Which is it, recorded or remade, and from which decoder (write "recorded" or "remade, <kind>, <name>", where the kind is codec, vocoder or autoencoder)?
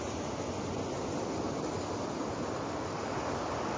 recorded